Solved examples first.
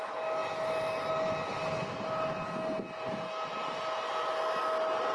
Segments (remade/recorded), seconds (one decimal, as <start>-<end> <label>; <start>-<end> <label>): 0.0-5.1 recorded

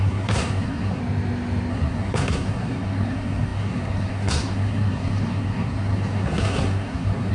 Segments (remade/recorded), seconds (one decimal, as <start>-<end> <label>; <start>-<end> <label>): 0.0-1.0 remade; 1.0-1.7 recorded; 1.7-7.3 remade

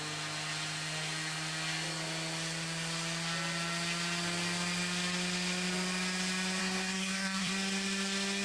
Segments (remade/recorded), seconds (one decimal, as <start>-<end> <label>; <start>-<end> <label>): 0.0-6.6 recorded; 6.6-7.5 remade; 7.5-8.4 recorded